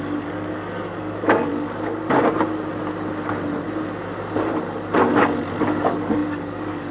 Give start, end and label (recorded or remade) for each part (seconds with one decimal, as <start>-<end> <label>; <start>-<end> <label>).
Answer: 0.0-1.5 remade; 1.5-5.6 recorded; 5.6-6.9 remade